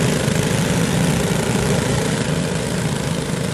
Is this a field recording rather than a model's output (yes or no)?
no